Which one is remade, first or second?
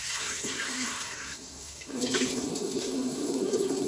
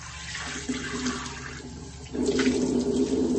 first